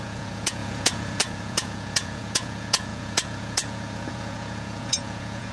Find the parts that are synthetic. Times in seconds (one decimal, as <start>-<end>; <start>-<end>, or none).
0.0-5.5